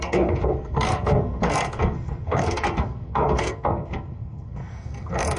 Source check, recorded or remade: remade